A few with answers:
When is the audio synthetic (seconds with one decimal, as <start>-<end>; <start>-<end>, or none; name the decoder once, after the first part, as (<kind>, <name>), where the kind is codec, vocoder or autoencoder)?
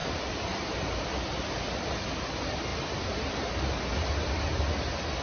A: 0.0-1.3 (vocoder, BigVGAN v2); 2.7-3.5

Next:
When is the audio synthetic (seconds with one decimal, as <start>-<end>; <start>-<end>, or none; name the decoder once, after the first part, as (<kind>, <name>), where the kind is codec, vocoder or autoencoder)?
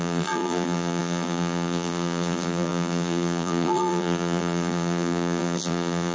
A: 0.0-6.1 (vocoder, BigVGAN v2)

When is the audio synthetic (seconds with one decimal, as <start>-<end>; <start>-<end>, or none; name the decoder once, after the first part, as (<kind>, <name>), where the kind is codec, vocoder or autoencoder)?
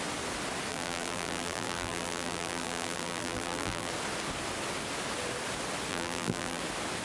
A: 0.7-3.9 (vocoder, BigVGAN v2); 5.9-6.6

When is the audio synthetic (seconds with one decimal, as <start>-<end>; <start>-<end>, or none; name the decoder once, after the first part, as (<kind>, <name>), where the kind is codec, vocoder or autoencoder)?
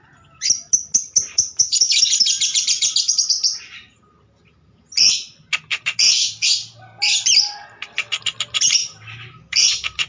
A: none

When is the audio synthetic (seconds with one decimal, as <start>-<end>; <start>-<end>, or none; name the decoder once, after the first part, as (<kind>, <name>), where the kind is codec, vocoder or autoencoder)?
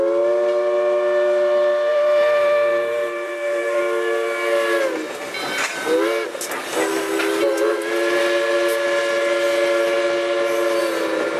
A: 1.9-3.8 (vocoder, BigVGAN v2)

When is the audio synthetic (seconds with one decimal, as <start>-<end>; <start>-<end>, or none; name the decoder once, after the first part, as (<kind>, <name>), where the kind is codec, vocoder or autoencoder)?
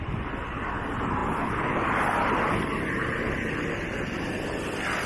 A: 0.0-5.1 (vocoder, BigVGAN v2)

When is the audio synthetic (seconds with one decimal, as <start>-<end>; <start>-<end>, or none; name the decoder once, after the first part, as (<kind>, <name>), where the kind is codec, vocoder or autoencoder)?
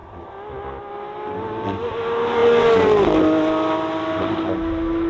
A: none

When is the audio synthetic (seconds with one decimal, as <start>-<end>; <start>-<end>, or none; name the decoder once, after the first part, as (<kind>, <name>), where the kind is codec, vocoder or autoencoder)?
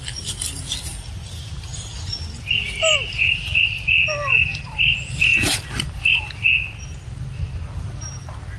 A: none